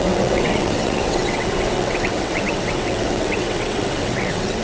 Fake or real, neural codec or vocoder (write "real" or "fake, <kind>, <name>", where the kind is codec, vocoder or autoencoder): fake, vocoder, WaveNeXt